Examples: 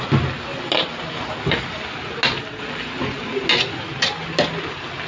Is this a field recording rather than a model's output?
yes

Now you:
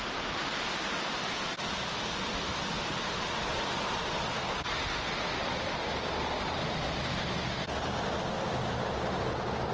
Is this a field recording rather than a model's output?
yes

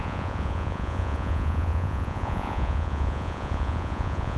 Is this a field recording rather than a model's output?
no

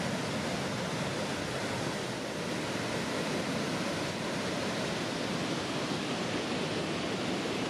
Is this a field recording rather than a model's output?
yes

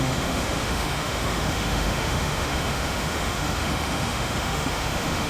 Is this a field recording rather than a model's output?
no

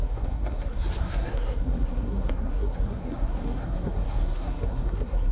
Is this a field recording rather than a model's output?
no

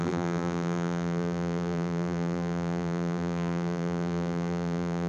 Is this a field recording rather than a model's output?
no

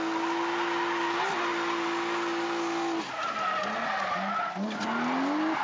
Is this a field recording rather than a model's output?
yes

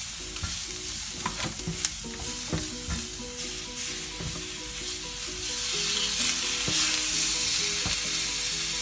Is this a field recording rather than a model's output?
yes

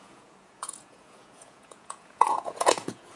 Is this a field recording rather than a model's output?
no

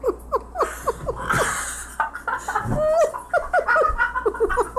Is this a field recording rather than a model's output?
yes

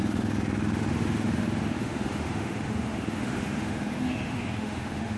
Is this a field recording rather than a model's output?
no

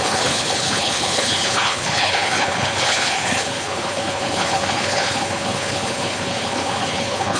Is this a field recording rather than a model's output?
no